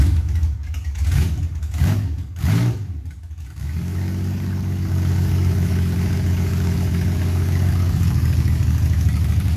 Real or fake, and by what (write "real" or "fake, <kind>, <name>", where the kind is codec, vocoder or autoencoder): fake, codec, DAC